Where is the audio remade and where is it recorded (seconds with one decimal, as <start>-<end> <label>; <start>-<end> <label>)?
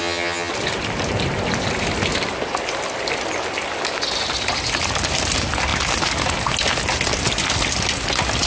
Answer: 0.0-0.5 remade; 0.5-8.5 recorded